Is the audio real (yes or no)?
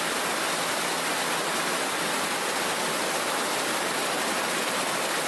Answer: yes